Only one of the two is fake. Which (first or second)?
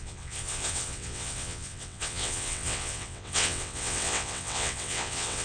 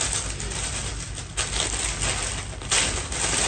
first